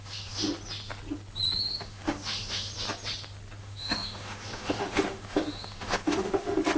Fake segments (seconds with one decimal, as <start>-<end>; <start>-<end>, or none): 0.0-0.4; 1.8-2.7; 3.6-6.8